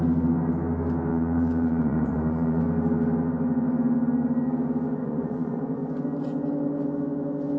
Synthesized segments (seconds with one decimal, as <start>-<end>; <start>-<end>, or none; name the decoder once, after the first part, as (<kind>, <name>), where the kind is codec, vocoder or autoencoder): 1.1-2.6 (vocoder, Vocos); 5.0-5.8